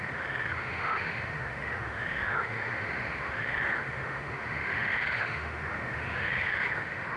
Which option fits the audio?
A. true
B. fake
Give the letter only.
B